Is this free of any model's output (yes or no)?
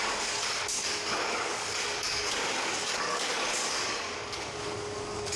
no